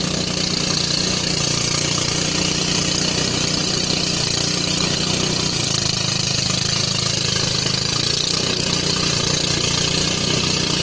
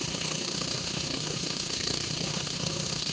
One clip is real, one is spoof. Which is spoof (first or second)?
second